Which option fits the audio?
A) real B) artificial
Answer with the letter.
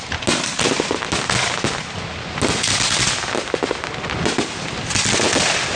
A